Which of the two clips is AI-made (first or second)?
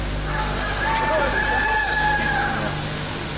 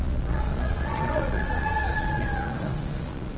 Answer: second